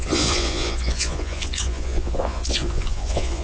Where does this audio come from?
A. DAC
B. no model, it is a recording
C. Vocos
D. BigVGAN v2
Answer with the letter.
C